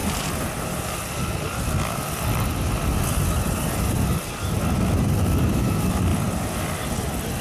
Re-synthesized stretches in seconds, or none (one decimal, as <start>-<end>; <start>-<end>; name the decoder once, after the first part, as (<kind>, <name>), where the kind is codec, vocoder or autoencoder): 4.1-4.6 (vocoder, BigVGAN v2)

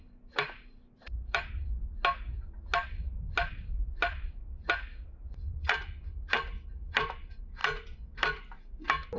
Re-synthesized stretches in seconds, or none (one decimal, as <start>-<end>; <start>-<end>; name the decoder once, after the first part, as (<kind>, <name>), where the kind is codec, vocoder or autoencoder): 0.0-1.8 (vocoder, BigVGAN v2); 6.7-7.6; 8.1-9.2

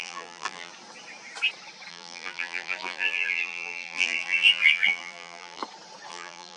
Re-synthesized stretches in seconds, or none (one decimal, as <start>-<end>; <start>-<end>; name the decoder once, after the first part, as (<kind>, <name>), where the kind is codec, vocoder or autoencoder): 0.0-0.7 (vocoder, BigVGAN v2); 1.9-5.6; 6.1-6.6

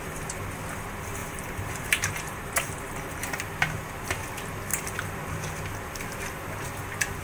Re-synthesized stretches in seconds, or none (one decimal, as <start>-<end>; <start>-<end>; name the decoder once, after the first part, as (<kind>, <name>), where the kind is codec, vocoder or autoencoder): 1.2-2.1 (vocoder, BigVGAN v2)